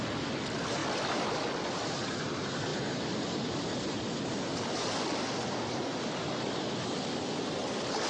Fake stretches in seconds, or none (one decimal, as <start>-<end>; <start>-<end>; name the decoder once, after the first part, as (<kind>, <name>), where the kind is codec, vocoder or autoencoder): 0.0-8.1 (vocoder, BigVGAN v2)